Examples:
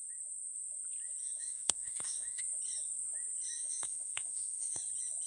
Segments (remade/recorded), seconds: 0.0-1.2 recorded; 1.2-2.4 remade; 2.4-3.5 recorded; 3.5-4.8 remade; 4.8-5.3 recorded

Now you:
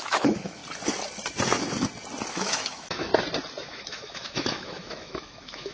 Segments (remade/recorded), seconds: 0.0-0.6 remade; 0.6-2.3 recorded; 2.3-3.1 remade; 3.1-3.7 recorded; 3.7-5.7 remade

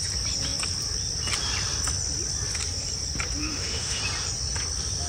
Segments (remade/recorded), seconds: 0.0-3.4 recorded; 3.4-4.0 remade; 4.0-5.1 recorded